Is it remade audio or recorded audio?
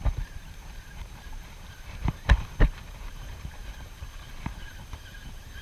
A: remade